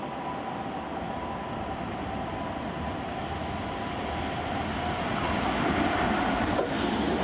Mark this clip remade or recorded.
recorded